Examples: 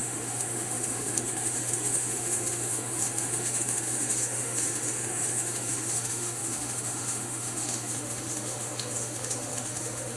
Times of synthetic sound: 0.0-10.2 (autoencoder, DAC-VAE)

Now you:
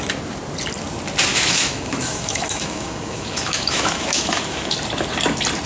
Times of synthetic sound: 1.3-4.7 (autoencoder, DAC-VAE)

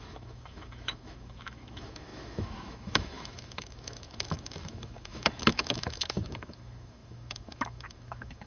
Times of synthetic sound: 0.0-8.5 (autoencoder, DAC-VAE)

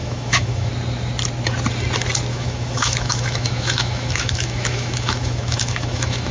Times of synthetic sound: 0.0-0.7 (autoencoder, DAC-VAE); 2.3-6.3

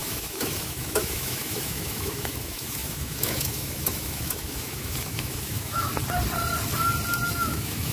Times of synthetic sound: 0.0-5.9 (autoencoder, DAC-VAE); 7.3-7.9

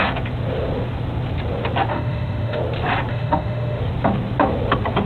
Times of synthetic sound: 1.9-2.6 (autoencoder, DAC-VAE); 3.1-3.8

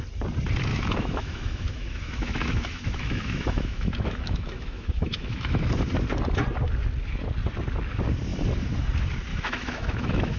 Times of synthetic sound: 0.7-5.7 (autoencoder, DAC-VAE); 9.3-10.4

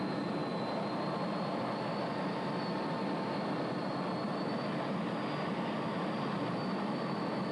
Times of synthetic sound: none